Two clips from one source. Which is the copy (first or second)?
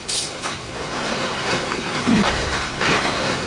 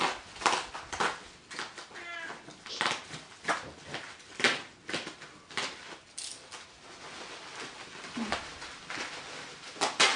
first